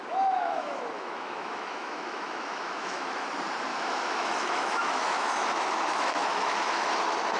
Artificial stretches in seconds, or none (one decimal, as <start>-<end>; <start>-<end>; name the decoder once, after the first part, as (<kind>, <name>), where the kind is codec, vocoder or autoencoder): 0.0-3.3 (autoencoder, DAC-VAE); 3.7-6.9